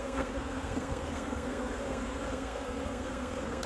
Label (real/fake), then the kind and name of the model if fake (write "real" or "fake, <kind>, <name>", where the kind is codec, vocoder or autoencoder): fake, codec, SNAC